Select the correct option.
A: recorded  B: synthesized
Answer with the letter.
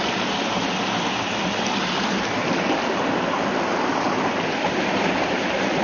A